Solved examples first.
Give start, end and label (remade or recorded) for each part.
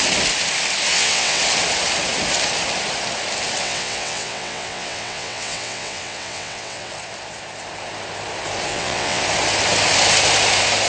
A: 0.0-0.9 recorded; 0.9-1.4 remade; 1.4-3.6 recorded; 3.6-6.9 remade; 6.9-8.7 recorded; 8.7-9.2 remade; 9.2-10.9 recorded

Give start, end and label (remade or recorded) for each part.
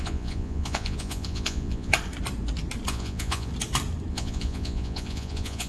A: 0.0-1.9 remade; 1.9-2.9 recorded; 2.9-3.5 remade; 3.5-4.1 recorded; 4.1-5.7 remade